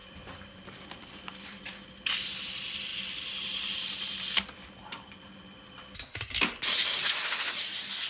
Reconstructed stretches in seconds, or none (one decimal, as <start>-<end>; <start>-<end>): 0.0-2.4